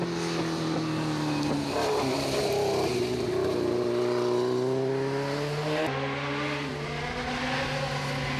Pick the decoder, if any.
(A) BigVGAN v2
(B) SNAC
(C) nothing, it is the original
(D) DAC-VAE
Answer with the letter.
C